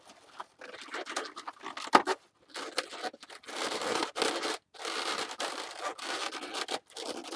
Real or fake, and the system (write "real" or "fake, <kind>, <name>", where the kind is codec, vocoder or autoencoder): real